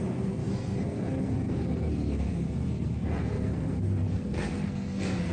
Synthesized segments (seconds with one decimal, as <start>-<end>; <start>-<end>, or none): 0.0-5.3